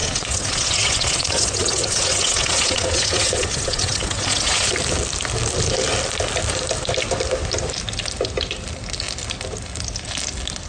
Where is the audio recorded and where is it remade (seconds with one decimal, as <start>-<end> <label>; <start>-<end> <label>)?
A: 0.0-4.7 remade; 4.7-10.7 recorded